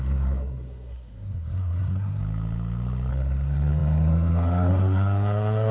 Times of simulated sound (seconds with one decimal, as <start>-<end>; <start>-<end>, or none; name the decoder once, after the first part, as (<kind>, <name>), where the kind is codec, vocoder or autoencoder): 0.0-2.2 (codec, SNAC); 3.1-5.7